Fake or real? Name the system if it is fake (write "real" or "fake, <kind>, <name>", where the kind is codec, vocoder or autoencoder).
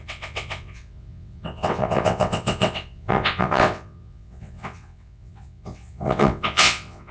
fake, vocoder, WaveNeXt